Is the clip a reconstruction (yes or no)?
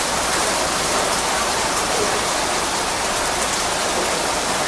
no